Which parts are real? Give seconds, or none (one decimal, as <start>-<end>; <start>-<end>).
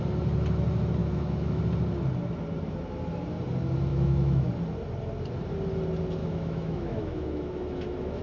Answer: 0.0-1.0; 1.6-3.9; 4.5-6.2